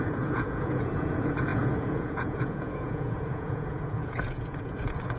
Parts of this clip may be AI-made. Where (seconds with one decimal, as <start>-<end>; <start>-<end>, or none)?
0.0-5.2